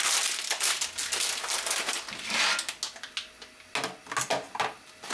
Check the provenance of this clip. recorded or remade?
recorded